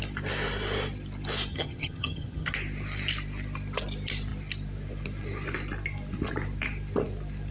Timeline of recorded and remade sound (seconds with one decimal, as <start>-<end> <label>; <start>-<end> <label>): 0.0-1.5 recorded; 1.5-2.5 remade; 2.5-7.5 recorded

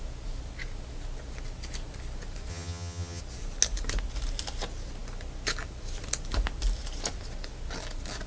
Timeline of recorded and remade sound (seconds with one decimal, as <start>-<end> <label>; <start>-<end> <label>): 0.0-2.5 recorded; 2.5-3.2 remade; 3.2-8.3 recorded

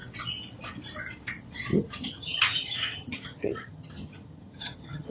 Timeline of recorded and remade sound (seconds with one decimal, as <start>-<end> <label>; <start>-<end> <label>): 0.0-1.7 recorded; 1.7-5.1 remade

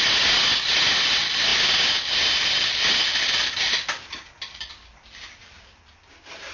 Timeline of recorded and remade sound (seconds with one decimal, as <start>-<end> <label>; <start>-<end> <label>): 0.0-6.5 recorded

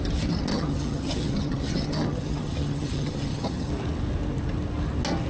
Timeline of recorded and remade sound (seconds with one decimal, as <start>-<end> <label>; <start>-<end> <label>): 0.0-0.5 recorded; 0.5-3.7 remade; 3.7-5.3 recorded

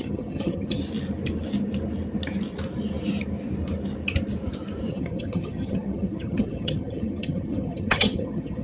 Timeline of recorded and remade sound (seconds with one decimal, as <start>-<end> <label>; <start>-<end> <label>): 0.0-0.8 remade; 0.8-4.9 recorded; 4.9-8.6 remade